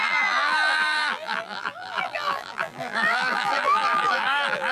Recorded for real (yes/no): no